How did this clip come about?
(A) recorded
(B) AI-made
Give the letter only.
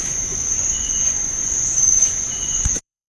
B